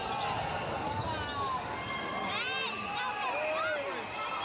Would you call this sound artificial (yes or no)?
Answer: no